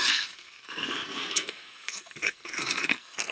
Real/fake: fake